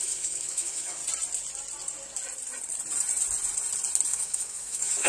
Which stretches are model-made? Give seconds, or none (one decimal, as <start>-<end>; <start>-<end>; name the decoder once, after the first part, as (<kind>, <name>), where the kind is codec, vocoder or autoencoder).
0.0-1.0 (autoencoder, DAC-VAE); 4.1-5.1